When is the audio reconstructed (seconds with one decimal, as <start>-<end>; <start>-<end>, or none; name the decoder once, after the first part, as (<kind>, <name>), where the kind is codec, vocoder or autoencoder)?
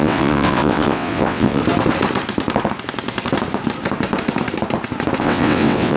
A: 0.0-1.6 (vocoder, WaveNeXt); 5.2-6.0